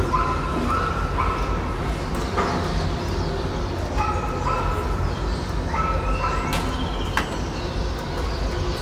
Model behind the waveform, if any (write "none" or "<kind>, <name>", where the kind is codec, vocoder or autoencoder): none